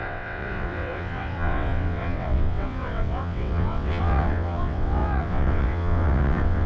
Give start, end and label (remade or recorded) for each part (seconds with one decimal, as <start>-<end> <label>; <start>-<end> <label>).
0.0-6.7 remade